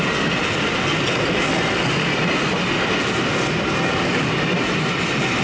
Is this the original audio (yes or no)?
yes